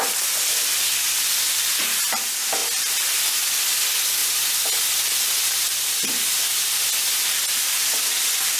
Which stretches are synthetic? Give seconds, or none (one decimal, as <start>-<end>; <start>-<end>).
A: none